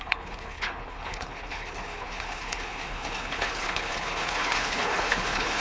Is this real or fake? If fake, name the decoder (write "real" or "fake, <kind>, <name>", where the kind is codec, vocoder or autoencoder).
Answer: fake, codec, HILCodec